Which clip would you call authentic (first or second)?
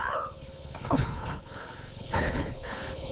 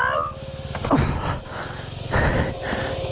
second